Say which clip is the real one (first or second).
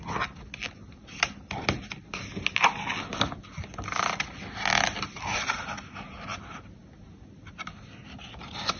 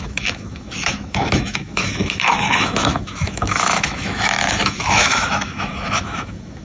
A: first